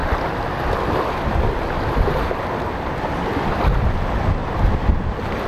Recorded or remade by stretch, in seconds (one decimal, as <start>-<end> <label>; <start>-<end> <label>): 0.0-3.1 remade; 3.1-4.4 recorded; 4.4-5.1 remade; 5.1-5.5 recorded